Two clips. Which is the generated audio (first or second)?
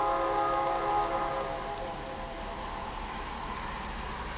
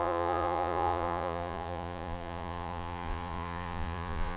second